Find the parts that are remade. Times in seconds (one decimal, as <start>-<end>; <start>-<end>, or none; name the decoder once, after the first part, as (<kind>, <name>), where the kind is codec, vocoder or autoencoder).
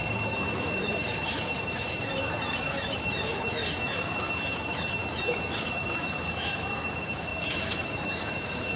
0.0-2.1 (autoencoder, DAC-VAE); 2.7-8.8